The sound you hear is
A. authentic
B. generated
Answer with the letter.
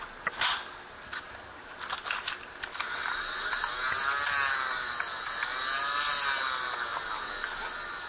A